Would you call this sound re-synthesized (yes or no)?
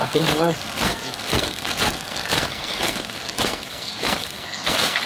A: yes